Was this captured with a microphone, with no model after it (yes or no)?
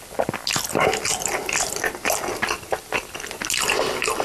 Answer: yes